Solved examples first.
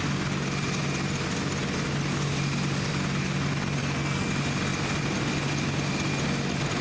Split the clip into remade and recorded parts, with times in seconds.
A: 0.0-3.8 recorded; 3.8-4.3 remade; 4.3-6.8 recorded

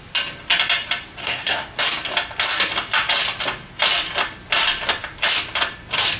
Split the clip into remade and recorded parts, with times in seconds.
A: 0.0-1.2 recorded; 1.2-1.8 remade; 1.8-6.2 recorded

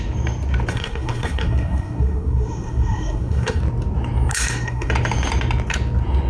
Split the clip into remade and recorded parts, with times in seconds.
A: 0.0-0.7 recorded; 0.7-3.6 remade; 3.6-4.3 recorded; 4.3-4.9 remade; 4.9-6.3 recorded

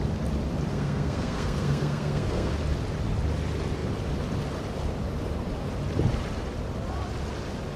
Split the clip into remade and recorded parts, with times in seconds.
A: 0.0-0.7 recorded; 0.7-2.5 remade; 2.5-7.8 recorded

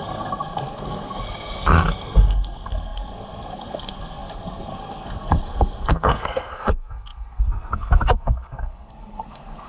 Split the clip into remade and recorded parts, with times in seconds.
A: 0.0-9.7 remade